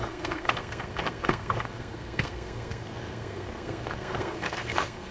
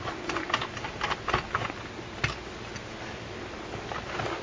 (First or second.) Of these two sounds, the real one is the second